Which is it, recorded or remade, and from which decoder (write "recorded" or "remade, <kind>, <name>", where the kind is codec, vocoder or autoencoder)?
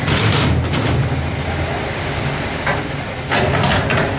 recorded